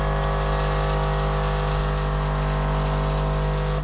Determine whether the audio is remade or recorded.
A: recorded